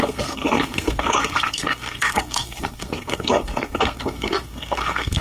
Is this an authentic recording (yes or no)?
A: no